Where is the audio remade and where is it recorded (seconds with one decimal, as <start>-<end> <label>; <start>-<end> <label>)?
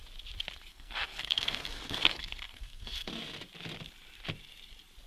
0.0-0.7 recorded; 0.7-3.1 remade; 3.1-5.1 recorded